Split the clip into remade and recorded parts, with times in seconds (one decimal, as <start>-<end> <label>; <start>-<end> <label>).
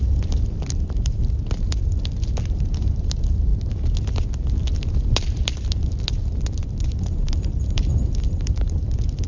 0.0-1.2 remade; 1.2-2.4 recorded; 2.4-3.5 remade; 3.5-7.5 recorded; 7.5-9.3 remade